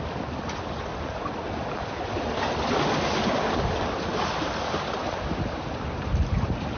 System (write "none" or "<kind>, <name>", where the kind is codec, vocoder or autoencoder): none